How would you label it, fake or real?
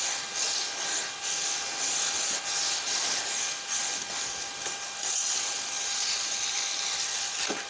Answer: real